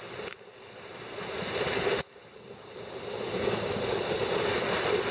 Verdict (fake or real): real